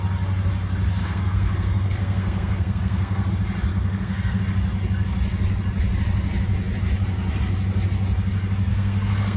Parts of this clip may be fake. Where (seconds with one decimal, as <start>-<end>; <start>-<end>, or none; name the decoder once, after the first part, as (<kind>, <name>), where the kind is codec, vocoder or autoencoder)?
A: 1.0-3.3 (codec, SNAC); 3.7-4.4; 8.7-9.4